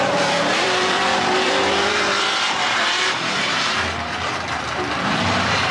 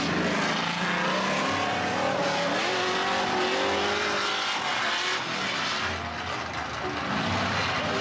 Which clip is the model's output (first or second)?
first